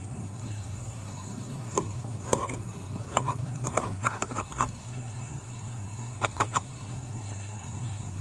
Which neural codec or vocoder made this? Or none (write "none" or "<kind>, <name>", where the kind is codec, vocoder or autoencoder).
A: codec, SNAC